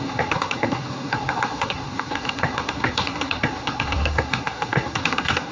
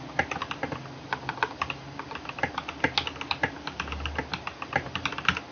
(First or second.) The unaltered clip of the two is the second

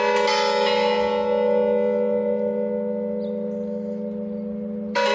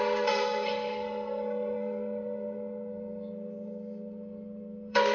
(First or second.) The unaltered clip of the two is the first